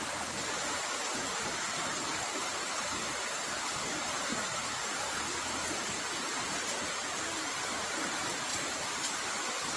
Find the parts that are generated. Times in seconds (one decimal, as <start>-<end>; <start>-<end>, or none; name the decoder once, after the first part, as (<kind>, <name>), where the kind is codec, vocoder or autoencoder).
8.5-9.3 (vocoder, BigVGAN v2)